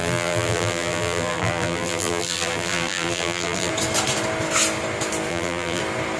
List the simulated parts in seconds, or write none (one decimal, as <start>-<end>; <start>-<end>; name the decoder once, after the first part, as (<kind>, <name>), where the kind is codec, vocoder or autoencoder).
0.0-3.7 (vocoder, BigVGAN v2); 5.3-5.8